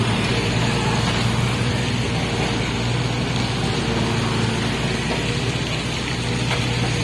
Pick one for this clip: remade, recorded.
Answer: recorded